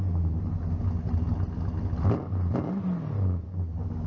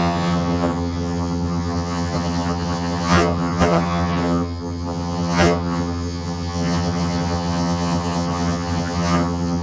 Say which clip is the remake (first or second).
second